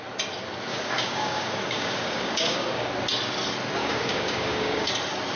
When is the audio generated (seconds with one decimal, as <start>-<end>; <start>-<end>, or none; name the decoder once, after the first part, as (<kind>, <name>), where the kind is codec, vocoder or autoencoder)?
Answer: 0.7-2.9 (codec, DAC); 3.8-4.9